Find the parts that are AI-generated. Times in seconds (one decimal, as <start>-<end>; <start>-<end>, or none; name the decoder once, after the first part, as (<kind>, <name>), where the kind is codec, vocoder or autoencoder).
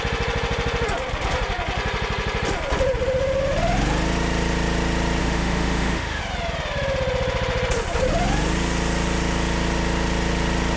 5.2-6.2 (autoencoder, DAC-VAE)